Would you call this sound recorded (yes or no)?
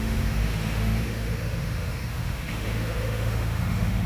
no